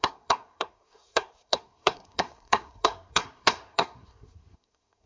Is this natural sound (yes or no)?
no